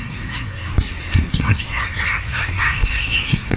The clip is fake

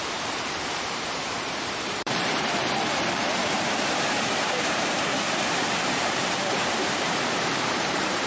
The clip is fake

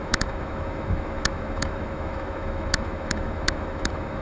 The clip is fake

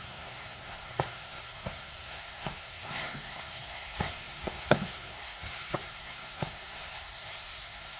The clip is fake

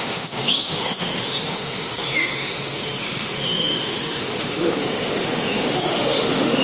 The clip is fake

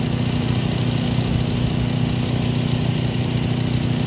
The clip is real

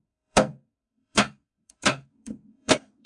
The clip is fake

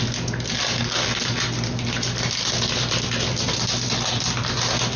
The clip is real